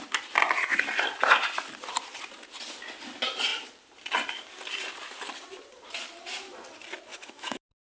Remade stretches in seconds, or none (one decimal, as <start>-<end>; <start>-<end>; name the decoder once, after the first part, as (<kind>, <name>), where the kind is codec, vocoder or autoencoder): 7.1-7.6 (autoencoder, DAC-VAE)